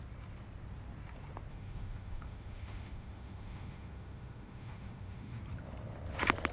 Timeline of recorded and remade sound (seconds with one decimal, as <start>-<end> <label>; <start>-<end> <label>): 0.0-1.5 recorded; 1.5-5.4 remade; 5.4-6.5 recorded